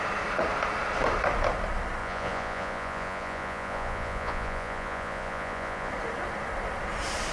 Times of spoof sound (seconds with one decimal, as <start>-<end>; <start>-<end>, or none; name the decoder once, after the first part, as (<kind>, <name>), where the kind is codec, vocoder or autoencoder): 2.0-5.9 (vocoder, Vocos)